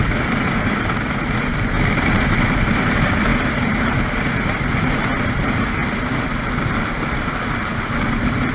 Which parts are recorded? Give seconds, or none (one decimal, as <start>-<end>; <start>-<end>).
1.5-2.1; 5.8-6.8